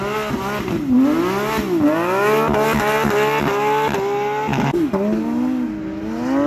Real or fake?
real